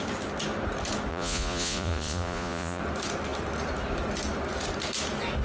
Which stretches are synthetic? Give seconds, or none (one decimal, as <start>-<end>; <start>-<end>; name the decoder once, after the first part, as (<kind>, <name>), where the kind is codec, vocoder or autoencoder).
1.1-2.8 (vocoder, Vocos)